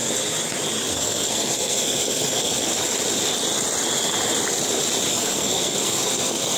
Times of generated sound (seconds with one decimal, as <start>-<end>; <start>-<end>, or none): 0.9-2.7; 5.1-6.6